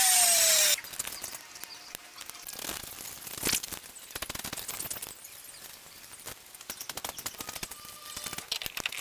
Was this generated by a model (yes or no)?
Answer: no